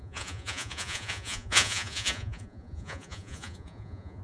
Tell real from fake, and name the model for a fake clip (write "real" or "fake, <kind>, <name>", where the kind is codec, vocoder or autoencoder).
fake, vocoder, Vocos